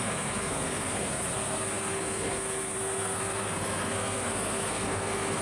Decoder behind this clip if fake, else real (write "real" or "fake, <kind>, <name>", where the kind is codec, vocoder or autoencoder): fake, codec, SNAC